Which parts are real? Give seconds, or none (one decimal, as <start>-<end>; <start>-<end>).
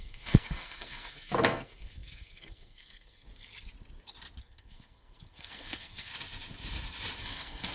3.3-4.4; 6.1-7.2